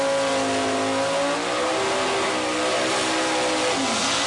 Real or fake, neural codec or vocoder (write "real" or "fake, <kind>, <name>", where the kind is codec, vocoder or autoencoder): real